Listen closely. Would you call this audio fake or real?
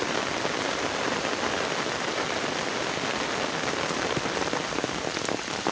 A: real